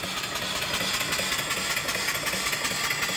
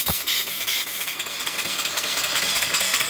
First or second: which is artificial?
second